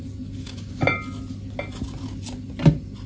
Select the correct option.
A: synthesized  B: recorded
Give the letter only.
B